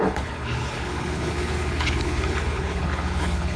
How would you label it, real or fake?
fake